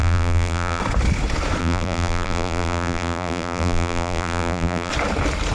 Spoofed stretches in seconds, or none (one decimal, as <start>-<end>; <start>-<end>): 0.0-0.8; 1.6-4.9

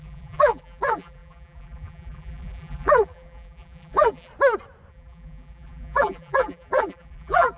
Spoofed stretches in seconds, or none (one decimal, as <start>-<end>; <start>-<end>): 0.0-4.3; 4.9-7.6

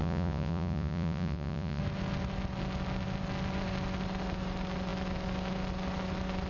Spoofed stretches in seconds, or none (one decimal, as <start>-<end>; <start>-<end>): 0.0-1.8

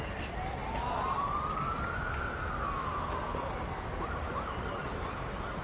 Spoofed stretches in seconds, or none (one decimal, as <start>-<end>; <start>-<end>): none